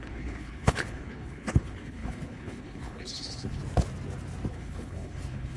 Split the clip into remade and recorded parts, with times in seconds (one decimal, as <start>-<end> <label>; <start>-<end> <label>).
0.0-3.6 remade; 3.6-4.5 recorded; 4.5-5.6 remade